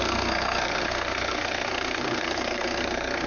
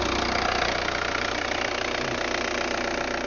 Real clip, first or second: second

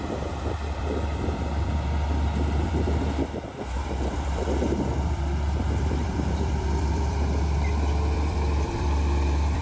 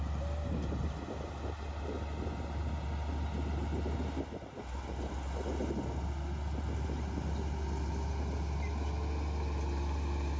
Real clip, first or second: second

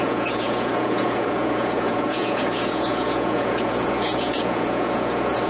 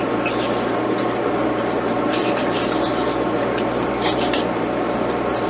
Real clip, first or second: second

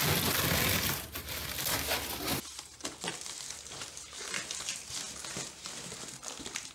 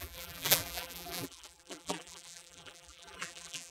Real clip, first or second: first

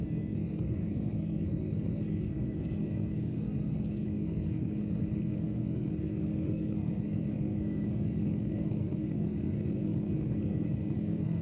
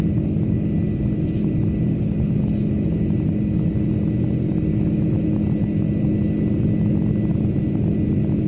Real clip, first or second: second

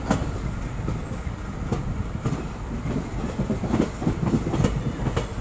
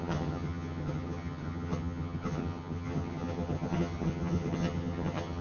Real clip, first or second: first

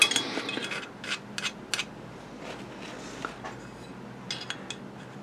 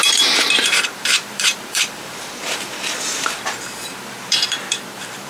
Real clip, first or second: first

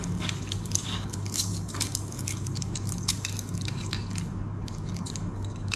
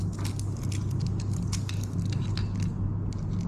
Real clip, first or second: second